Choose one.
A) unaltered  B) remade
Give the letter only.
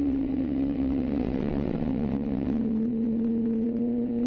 B